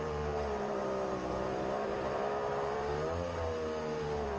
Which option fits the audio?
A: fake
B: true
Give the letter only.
A